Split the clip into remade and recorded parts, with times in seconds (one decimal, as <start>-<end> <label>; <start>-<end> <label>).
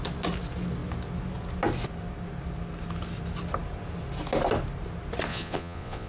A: 0.0-5.3 recorded; 5.3-6.1 remade